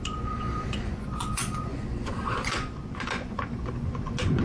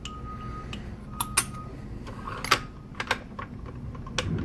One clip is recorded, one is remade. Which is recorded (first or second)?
second